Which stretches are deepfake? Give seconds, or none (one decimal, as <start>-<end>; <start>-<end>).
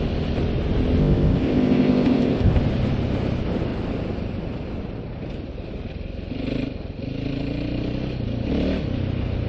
1.0-2.6